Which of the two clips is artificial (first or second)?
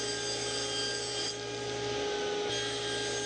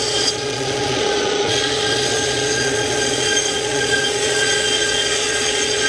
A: second